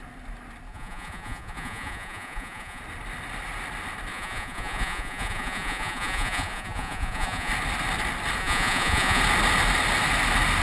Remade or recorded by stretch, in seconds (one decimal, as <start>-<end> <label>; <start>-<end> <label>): 0.0-0.7 recorded; 0.7-2.8 remade; 2.8-4.1 recorded; 4.1-7.5 remade; 7.5-8.4 recorded; 8.4-9.2 remade; 9.2-10.6 recorded